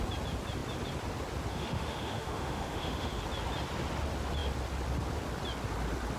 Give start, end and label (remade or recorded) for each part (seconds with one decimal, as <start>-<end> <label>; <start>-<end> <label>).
0.0-1.5 recorded; 1.5-3.2 remade; 3.2-6.2 recorded

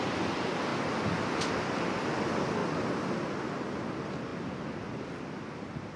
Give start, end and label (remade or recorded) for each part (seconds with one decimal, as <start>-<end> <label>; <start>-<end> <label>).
0.0-6.0 recorded

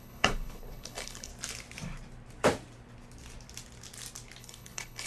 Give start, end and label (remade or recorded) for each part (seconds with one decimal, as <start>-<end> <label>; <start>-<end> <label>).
0.0-1.3 remade; 1.3-4.4 recorded; 4.4-5.1 remade